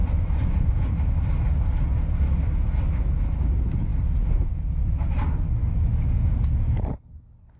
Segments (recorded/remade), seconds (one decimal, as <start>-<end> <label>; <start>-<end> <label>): 0.0-0.7 remade; 0.7-7.6 recorded